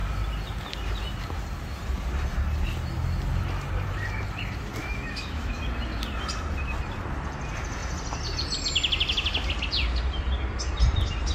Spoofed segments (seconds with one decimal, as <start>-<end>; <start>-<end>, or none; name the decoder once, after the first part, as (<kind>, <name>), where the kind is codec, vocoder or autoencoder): 4.8-5.6 (autoencoder, DAC-VAE)